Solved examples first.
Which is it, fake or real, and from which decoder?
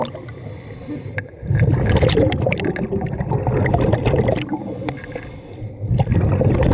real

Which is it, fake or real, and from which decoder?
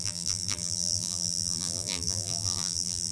fake, vocoder, BigVGAN v2